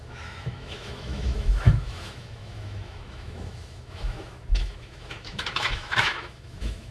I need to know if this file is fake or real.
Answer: fake